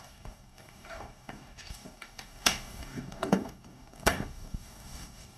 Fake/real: fake